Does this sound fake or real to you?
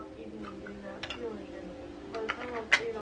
real